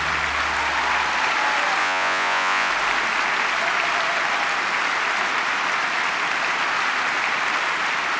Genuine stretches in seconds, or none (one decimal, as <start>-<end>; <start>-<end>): 0.0-1.8; 2.7-8.2